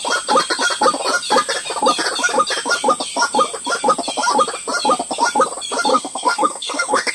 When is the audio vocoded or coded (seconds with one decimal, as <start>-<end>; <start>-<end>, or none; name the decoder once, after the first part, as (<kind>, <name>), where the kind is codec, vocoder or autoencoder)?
5.9-7.1 (codec, SNAC)